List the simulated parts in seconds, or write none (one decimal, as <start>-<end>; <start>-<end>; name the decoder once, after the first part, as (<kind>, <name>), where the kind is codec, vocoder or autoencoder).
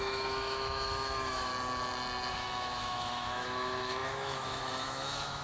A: 0.0-1.5 (autoencoder, DAC-VAE); 2.3-5.4